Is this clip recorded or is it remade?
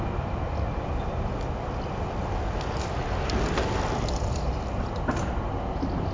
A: recorded